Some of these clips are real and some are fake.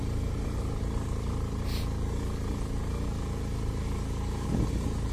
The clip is real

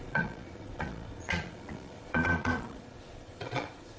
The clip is fake